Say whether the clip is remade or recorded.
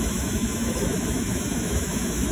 remade